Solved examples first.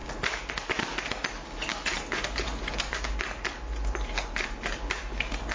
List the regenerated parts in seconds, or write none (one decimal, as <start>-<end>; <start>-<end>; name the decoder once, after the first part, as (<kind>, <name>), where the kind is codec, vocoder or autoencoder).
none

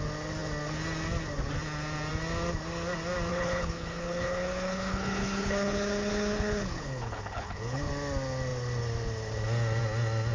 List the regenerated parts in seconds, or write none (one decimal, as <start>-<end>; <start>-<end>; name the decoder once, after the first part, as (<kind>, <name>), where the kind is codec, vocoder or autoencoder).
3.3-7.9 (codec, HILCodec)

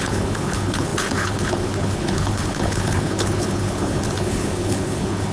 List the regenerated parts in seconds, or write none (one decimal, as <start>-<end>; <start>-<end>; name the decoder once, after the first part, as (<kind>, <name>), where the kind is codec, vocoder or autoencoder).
0.0-5.3 (codec, HILCodec)

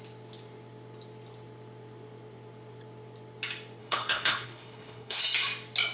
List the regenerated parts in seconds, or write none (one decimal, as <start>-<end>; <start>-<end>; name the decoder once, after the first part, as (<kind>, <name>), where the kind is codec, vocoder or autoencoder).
3.8-5.2 (codec, HILCodec)

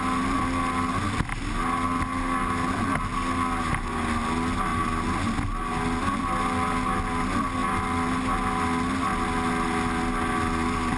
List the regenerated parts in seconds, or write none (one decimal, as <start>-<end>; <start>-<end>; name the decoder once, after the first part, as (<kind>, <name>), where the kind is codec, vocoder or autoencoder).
none